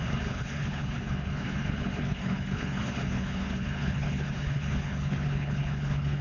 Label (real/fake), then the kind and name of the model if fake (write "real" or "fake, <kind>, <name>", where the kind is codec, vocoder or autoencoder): fake, codec, HILCodec